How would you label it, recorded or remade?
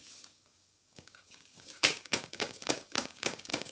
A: remade